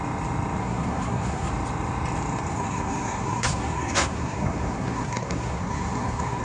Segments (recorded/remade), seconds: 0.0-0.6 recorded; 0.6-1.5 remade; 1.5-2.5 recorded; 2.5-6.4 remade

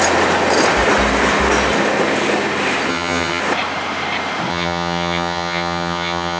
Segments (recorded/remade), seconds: 0.0-2.9 recorded; 2.9-3.4 remade; 3.4-4.5 recorded; 4.5-6.4 remade

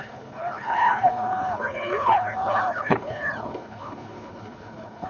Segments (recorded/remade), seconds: 0.0-5.1 remade